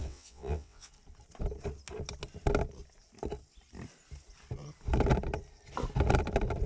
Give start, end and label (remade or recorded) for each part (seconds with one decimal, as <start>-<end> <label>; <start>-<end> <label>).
0.0-0.9 remade; 0.9-6.7 recorded